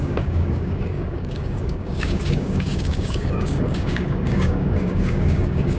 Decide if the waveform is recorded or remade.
remade